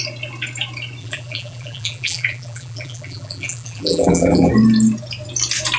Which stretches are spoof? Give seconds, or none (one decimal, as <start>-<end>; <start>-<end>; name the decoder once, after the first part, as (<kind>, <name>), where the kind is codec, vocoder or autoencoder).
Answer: 1.0-4.5 (vocoder, BigVGAN v2)